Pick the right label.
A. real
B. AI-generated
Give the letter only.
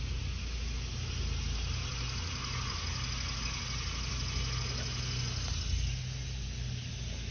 A